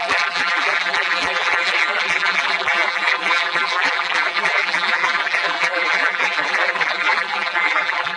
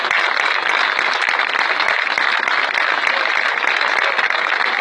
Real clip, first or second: second